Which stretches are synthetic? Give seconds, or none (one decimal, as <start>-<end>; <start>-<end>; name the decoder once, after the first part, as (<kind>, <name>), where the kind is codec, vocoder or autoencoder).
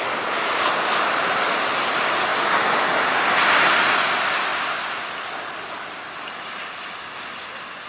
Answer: none